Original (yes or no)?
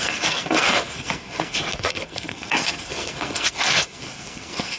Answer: no